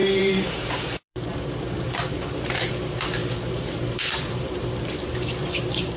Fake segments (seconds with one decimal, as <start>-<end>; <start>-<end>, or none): 0.0-2.7; 3.2-6.0